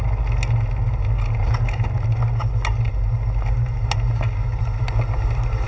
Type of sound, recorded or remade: recorded